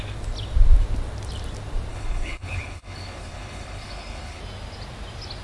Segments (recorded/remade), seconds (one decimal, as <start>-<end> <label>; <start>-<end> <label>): 0.0-1.9 recorded; 1.9-4.4 remade; 4.4-5.4 recorded